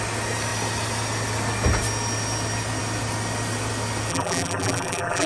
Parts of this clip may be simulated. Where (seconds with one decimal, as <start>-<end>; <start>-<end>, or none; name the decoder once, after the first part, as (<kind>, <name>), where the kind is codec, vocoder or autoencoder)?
4.1-5.3 (vocoder, BigVGAN v2)